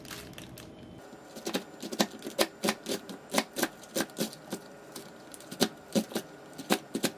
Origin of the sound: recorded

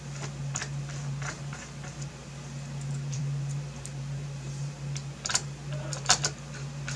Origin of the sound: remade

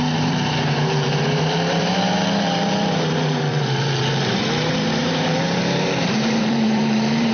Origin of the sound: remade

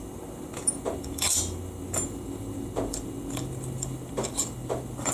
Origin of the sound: remade